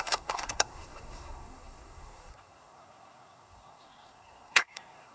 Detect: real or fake fake